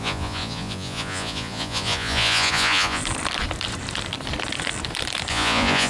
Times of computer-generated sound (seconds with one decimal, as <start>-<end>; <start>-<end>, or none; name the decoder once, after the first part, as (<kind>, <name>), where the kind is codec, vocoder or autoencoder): 0.0-3.0 (vocoder, Vocos); 5.3-5.9